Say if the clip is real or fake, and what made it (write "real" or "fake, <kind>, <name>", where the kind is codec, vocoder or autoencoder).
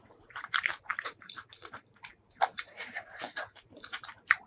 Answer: fake, vocoder, BigVGAN v2